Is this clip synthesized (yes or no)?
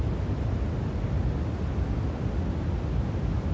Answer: no